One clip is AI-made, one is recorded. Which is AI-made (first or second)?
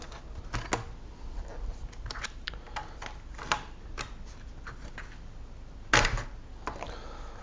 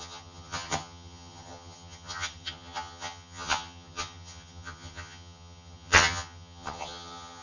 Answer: second